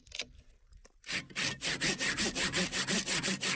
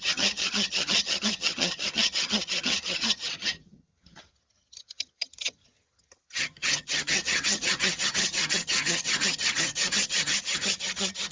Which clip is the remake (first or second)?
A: second